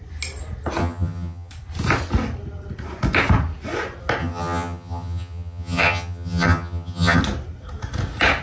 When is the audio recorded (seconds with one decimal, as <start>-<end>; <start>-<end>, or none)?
0.0-0.8; 1.5-4.2; 7.2-8.4